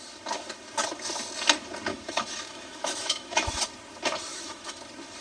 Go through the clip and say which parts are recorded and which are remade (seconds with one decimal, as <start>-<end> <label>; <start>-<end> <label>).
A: 0.0-1.9 recorded; 1.9-3.6 remade; 3.6-4.3 recorded; 4.3-4.8 remade; 4.8-5.2 recorded